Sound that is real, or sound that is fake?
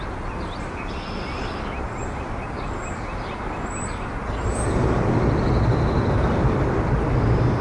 real